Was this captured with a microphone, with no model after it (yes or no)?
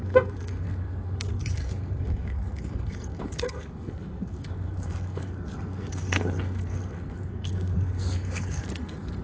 no